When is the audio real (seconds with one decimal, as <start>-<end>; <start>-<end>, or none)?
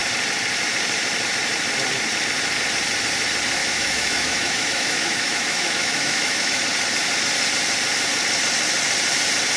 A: 0.0-3.6; 6.6-9.6